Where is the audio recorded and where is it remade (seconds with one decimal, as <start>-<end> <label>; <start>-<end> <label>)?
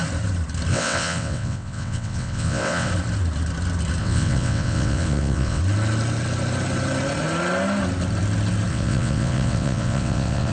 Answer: 0.0-0.7 recorded; 0.7-2.9 remade; 2.9-4.0 recorded; 4.0-5.6 remade; 5.6-8.7 recorded; 8.7-10.5 remade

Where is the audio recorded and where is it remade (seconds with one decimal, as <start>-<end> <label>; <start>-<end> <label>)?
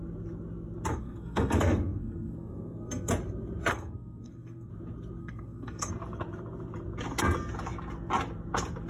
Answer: 0.0-0.9 recorded; 0.9-3.1 remade; 3.1-3.7 recorded; 3.7-4.7 remade; 4.7-5.2 recorded; 5.2-5.9 remade; 5.9-8.9 recorded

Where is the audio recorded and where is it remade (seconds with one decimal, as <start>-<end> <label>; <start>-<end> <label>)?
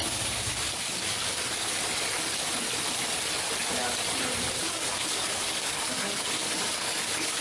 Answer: 0.0-1.7 remade; 1.7-4.5 recorded; 4.5-7.4 remade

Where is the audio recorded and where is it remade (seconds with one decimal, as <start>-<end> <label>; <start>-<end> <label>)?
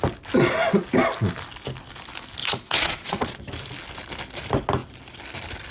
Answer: 0.0-2.4 recorded; 2.4-3.4 remade; 3.4-5.7 recorded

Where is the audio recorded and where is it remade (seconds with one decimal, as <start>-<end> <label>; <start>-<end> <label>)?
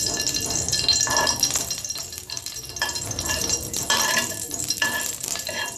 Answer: 0.0-2.0 recorded; 2.0-5.8 remade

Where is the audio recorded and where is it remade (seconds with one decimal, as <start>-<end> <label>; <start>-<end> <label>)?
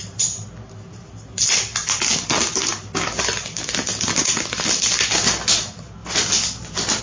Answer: 0.0-1.7 remade; 1.7-2.7 recorded; 2.7-3.9 remade; 3.9-4.4 recorded; 4.4-7.0 remade